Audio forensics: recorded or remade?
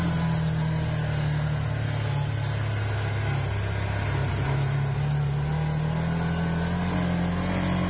recorded